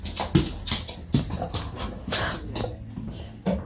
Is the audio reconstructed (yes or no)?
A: no